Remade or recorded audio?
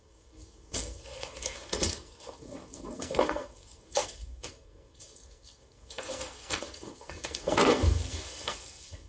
remade